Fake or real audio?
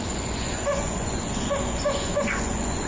fake